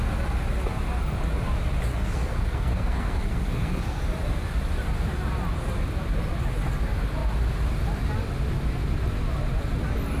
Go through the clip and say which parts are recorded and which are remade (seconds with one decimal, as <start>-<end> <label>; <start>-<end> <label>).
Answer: 0.0-1.9 recorded; 1.9-4.0 remade; 4.0-10.2 recorded